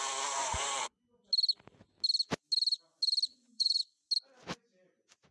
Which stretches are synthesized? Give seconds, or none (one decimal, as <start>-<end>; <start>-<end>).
0.4-1.0; 3.3-3.8